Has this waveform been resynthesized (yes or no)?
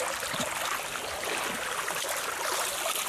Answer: no